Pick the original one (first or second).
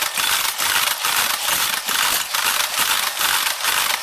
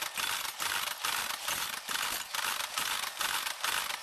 second